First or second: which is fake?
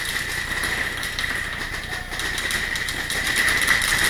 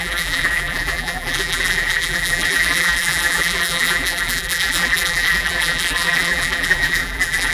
second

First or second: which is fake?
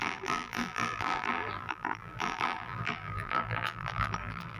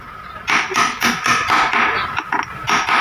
first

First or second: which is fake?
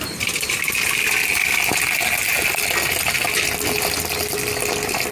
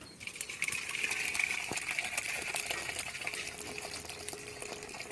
second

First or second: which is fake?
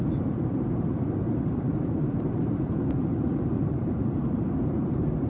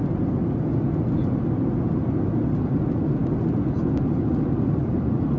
first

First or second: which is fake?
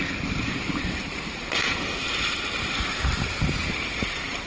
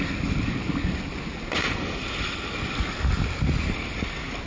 first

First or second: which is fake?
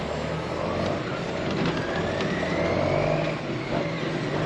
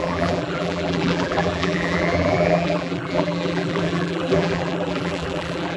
second